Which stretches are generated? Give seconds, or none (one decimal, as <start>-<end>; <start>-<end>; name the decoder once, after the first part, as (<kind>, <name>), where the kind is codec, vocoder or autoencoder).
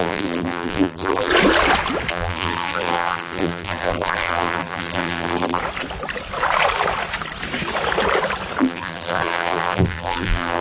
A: 0.0-1.3 (vocoder, BigVGAN v2); 2.1-5.6; 8.6-10.6